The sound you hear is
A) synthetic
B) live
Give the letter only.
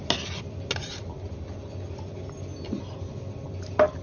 B